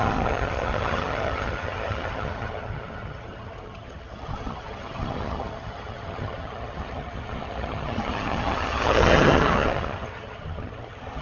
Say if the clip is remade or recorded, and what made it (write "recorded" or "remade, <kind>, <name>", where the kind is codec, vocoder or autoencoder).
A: remade, vocoder, HiFi-GAN